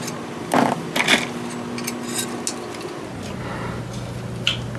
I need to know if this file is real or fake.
real